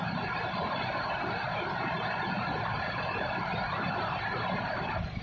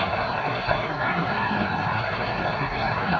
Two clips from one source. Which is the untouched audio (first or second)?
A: first